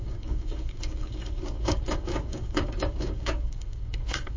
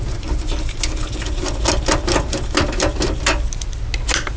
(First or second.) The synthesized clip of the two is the first